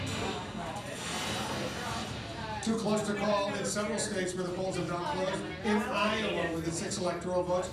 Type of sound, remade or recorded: recorded